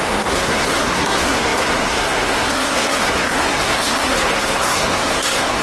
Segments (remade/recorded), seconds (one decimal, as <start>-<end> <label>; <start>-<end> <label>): 0.0-5.6 remade